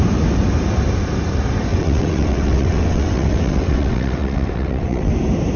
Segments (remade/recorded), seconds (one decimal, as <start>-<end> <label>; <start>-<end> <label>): 0.0-1.7 recorded; 1.7-5.1 remade; 5.1-5.6 recorded

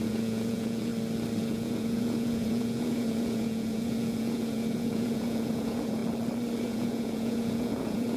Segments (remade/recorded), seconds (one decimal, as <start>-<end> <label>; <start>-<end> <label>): 0.0-0.9 remade; 0.9-1.4 recorded; 1.4-6.0 remade; 6.0-6.6 recorded; 6.6-8.2 remade